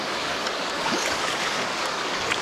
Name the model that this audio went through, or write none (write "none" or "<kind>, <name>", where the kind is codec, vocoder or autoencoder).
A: codec, DAC